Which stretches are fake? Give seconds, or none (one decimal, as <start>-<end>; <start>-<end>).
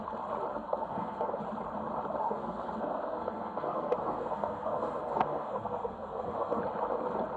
0.5-1.4; 2.2-6.6